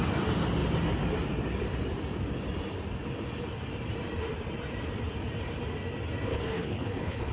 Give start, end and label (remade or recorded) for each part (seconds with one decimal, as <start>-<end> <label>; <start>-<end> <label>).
0.0-6.3 recorded; 6.3-7.3 remade